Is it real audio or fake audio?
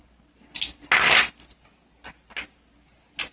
real